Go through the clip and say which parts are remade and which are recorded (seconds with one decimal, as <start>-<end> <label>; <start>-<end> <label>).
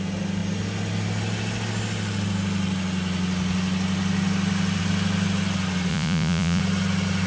0.0-5.9 recorded; 5.9-6.6 remade; 6.6-7.3 recorded